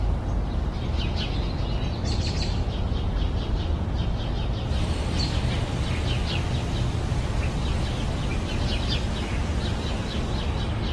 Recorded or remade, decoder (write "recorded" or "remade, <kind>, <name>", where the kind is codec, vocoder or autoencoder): recorded